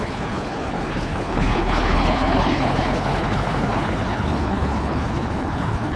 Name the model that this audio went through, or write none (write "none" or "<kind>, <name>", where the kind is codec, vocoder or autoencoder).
codec, HILCodec